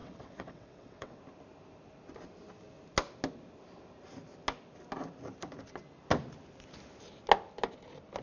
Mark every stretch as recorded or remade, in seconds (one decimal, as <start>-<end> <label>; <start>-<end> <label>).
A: 0.0-1.2 remade; 1.2-8.2 recorded